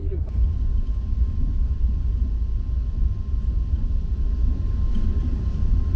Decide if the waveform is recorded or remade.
recorded